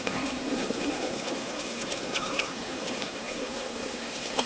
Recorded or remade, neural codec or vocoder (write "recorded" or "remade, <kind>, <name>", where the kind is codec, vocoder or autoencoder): remade, codec, SNAC